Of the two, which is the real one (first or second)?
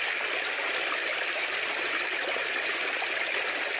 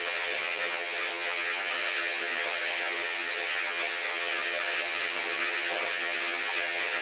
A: first